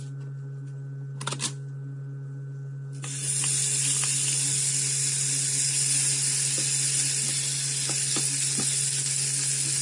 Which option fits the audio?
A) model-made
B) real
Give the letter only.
B